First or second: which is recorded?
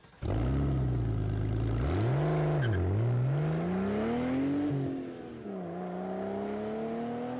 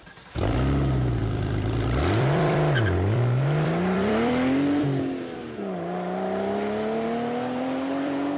first